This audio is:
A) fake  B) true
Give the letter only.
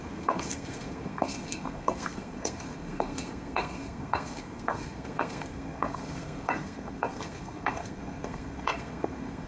A